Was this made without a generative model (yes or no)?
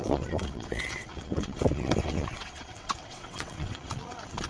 no